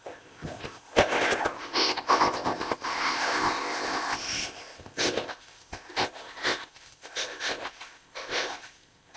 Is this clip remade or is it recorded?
remade